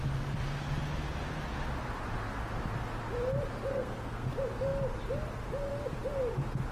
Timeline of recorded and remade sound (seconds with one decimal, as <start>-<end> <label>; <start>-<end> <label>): 0.0-3.7 recorded; 3.7-4.3 remade; 4.3-6.7 recorded